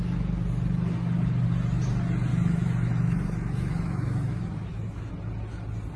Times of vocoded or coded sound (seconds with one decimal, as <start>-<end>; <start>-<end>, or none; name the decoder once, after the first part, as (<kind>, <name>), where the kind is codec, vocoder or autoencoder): 2.3-5.1 (autoencoder, DAC-VAE)